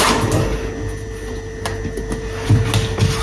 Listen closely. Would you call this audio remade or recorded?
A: recorded